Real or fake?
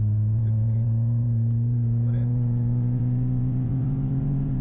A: fake